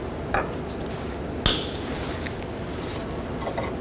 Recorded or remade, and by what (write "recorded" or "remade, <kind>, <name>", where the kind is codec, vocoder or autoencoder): recorded